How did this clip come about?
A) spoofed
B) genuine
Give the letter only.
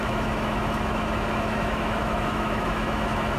A